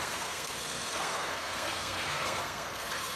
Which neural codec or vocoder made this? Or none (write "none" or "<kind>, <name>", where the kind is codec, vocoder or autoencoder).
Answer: codec, SNAC